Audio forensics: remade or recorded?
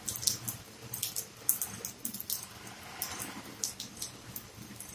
recorded